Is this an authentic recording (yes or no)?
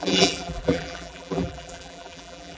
no